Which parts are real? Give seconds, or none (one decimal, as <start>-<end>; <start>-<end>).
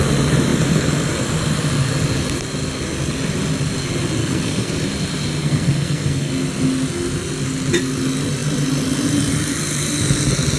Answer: 0.0-4.2; 4.7-5.4; 6.3-10.6